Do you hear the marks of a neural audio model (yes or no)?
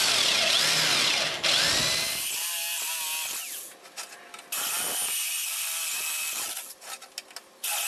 no